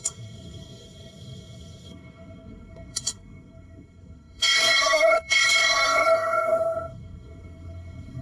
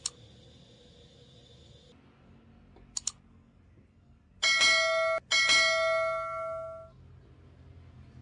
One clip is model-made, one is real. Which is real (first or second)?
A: second